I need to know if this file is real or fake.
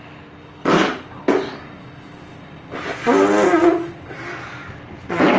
real